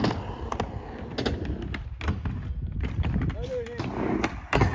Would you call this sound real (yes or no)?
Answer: yes